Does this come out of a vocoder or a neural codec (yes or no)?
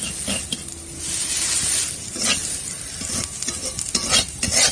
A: no